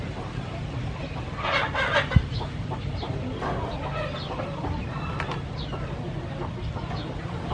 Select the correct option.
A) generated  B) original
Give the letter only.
B